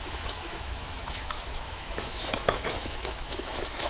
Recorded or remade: remade